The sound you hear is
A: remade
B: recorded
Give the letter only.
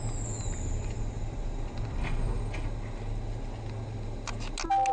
B